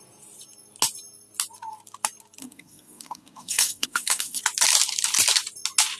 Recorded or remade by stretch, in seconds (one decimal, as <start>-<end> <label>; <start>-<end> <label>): 0.0-2.4 recorded; 2.4-4.4 remade; 4.4-6.0 recorded